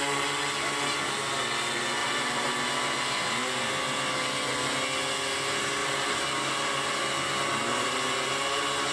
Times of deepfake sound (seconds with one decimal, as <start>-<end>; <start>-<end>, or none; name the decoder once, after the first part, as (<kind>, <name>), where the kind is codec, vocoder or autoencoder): 2.0-2.5 (vocoder, BigVGAN v2); 5.8-6.7